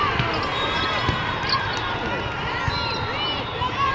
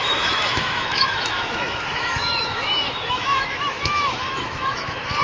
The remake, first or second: second